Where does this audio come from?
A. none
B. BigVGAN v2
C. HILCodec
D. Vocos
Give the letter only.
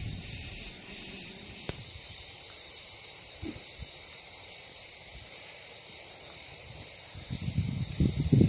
B